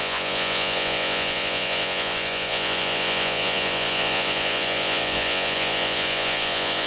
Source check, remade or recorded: remade